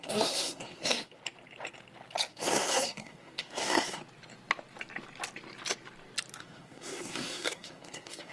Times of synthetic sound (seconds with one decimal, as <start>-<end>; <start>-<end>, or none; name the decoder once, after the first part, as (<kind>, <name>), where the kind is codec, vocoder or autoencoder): 0.0-1.2 (codec, SNAC); 2.3-4.0; 6.4-8.3